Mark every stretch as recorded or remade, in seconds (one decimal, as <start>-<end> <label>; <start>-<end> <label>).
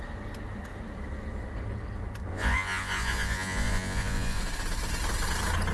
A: 0.0-2.3 recorded; 2.3-4.4 remade; 4.4-5.7 recorded